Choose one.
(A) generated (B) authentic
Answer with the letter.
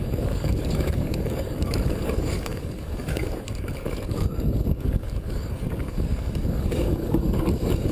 A